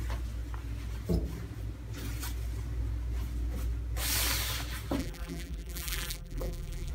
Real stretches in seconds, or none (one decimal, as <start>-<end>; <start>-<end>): 0.0-5.0